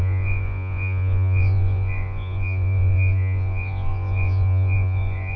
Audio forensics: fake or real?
fake